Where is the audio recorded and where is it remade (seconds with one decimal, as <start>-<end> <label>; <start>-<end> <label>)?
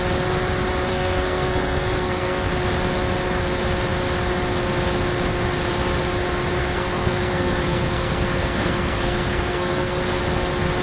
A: 0.0-0.9 recorded; 0.9-2.5 remade; 2.5-6.6 recorded; 6.6-10.2 remade; 10.2-10.8 recorded